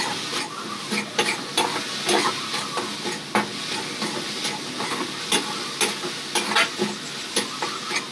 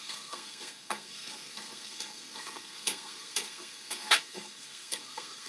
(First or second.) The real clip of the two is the first